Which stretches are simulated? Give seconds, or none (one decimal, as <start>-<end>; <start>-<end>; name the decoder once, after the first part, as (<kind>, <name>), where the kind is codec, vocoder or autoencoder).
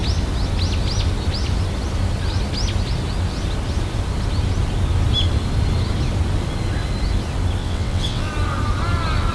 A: 7.6-8.3 (vocoder, WaveNeXt)